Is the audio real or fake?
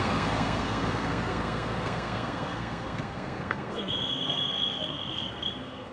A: fake